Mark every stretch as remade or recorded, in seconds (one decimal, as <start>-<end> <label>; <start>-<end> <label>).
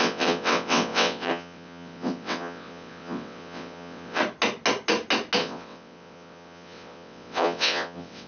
0.0-4.2 remade; 4.2-5.4 recorded; 5.4-8.3 remade